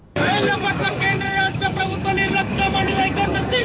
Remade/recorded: remade